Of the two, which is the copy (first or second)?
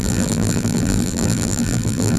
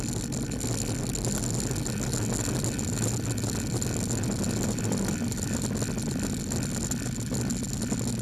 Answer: first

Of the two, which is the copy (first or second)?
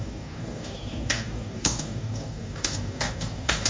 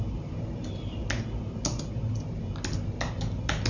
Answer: first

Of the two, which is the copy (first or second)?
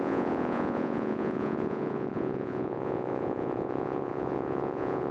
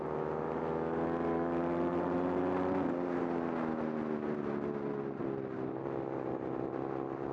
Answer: first